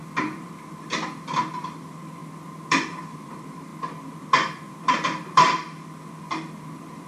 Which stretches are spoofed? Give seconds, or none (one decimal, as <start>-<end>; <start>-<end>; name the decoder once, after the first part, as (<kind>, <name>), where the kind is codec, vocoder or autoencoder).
0.0-2.2 (vocoder, BigVGAN v2); 2.7-3.7; 4.7-7.1